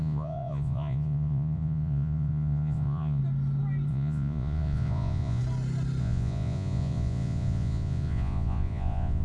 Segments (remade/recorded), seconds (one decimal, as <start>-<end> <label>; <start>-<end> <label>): 0.0-3.2 remade; 3.2-3.9 recorded; 3.9-5.4 remade; 5.4-6.0 recorded; 6.0-9.2 remade